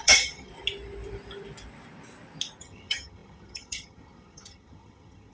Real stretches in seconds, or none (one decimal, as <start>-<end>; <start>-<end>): 0.5-2.6